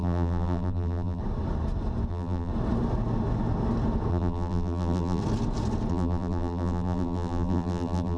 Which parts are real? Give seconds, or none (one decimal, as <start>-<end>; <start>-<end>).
1.2-2.1; 2.5-4.1; 5.2-5.9